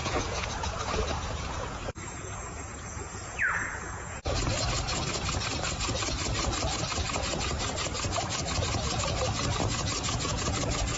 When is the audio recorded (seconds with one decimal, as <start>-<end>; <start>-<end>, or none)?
4.5-9.6; 10.5-11.0